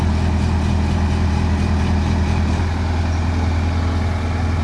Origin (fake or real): real